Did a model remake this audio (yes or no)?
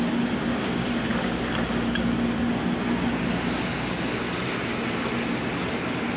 no